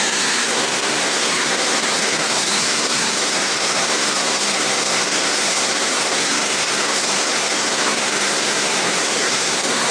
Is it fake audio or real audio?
fake